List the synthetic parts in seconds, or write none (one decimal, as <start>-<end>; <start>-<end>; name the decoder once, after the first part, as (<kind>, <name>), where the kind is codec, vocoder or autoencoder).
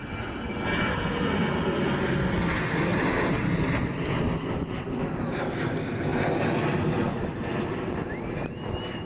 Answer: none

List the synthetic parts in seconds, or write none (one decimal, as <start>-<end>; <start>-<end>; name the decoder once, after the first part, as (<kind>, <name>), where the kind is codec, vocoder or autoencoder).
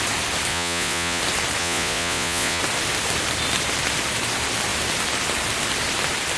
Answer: 0.5-1.2 (vocoder, Vocos); 1.6-2.6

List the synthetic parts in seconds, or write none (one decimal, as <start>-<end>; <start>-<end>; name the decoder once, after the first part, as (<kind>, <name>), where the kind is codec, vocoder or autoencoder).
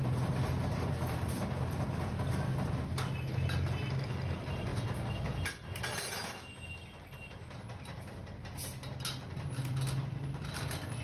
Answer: none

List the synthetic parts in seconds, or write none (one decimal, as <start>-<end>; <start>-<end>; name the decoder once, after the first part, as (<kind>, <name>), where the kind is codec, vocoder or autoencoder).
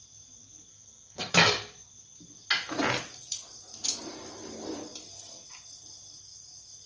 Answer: 0.7-1.3 (codec, SNAC)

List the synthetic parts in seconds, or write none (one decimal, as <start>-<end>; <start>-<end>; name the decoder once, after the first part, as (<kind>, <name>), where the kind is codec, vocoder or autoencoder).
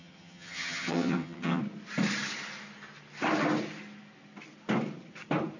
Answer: 0.0-1.6 (vocoder, HiFi-GAN)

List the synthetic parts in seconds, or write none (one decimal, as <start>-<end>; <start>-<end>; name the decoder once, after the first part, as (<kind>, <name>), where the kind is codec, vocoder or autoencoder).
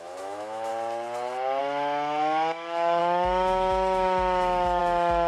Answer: 0.0-0.7 (autoencoder, DAC-VAE); 1.6-5.3